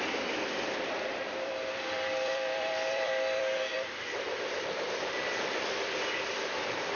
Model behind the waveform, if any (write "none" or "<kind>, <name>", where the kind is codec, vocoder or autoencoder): vocoder, BigVGAN v2